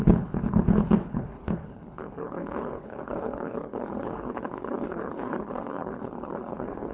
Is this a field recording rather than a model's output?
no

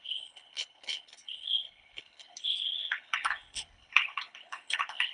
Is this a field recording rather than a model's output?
no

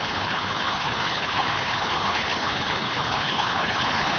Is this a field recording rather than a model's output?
no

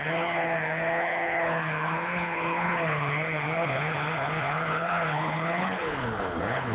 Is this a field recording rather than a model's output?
no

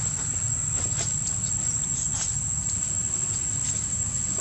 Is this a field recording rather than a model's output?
yes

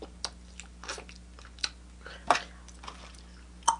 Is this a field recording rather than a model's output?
yes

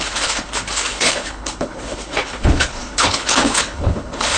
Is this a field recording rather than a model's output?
no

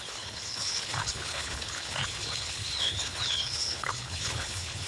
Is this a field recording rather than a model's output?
no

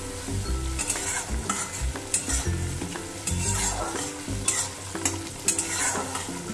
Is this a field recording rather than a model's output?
yes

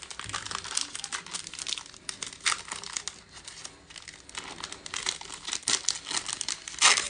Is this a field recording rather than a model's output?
yes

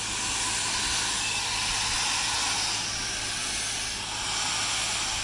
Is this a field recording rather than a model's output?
yes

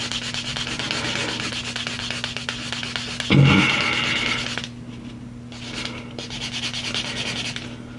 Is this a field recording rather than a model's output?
yes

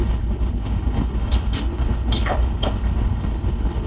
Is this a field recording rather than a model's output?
no